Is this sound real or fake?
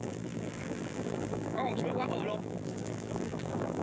fake